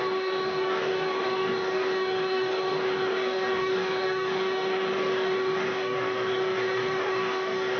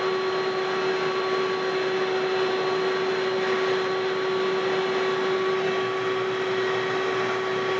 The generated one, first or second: first